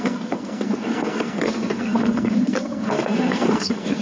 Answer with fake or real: fake